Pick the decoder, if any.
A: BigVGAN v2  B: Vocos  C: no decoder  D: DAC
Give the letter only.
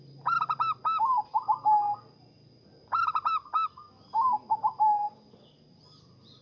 C